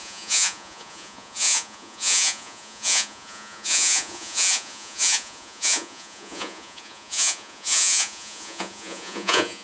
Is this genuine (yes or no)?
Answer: no